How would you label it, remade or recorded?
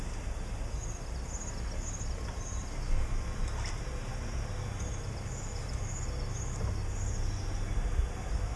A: recorded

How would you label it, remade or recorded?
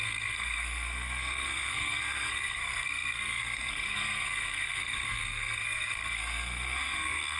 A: remade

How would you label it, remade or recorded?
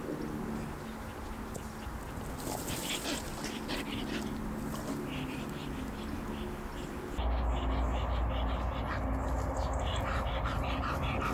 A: recorded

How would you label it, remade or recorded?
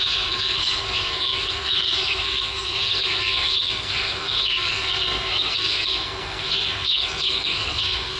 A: remade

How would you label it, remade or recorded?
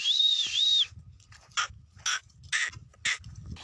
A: recorded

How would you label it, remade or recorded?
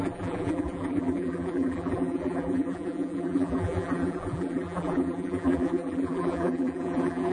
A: remade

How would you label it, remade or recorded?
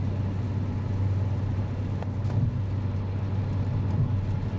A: recorded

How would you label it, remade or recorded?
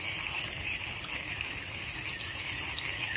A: recorded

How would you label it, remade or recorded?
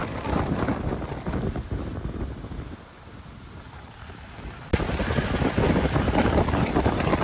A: remade